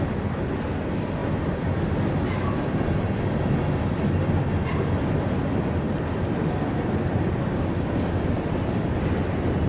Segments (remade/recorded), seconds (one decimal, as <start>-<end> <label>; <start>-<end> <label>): 0.0-9.7 recorded